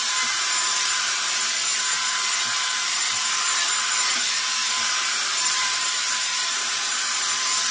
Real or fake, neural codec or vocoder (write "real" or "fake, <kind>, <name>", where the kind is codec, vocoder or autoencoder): fake, vocoder, BigVGAN v2